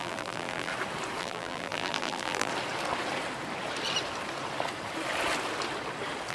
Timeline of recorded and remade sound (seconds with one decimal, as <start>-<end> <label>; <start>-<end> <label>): 0.0-0.7 remade; 0.7-1.2 recorded; 1.2-2.5 remade; 2.5-6.3 recorded